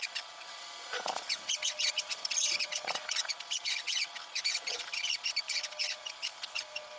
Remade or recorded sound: remade